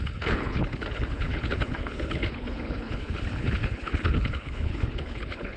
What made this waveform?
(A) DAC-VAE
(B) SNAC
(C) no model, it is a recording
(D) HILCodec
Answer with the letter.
D